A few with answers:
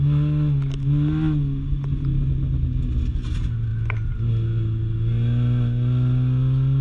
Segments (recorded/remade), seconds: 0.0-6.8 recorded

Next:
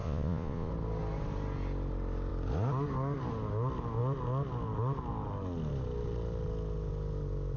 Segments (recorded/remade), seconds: 0.0-0.7 remade; 0.7-7.6 recorded

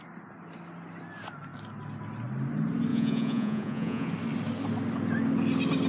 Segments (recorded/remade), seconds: 0.0-2.9 recorded; 2.9-4.1 remade; 4.1-5.9 recorded